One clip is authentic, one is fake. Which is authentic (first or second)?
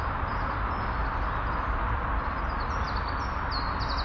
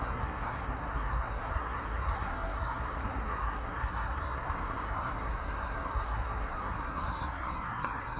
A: first